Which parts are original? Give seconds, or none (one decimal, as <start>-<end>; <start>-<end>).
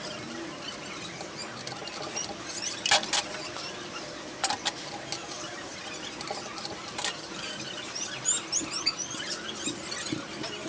0.0-10.7